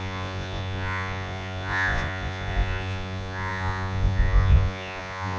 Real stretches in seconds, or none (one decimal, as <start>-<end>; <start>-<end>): none